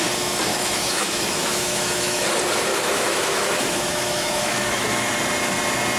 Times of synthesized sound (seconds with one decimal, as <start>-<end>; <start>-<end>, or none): 0.5-2.3; 2.7-5.1